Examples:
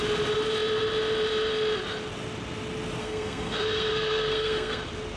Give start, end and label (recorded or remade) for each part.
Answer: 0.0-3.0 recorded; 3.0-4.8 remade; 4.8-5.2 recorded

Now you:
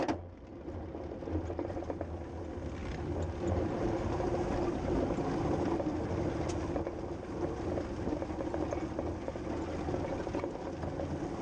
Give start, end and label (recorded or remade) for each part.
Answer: 0.0-11.4 recorded

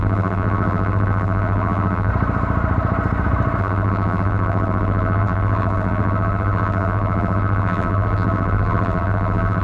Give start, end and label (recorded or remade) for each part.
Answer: 0.0-2.1 remade; 2.1-3.6 recorded; 3.6-9.6 remade

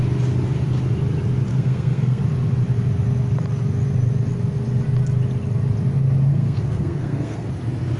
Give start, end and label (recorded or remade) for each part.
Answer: 0.0-1.5 recorded; 1.5-2.2 remade; 2.2-6.3 recorded; 6.3-7.5 remade; 7.5-8.0 recorded

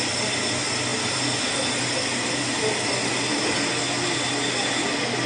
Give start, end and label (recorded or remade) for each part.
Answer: 0.0-5.3 recorded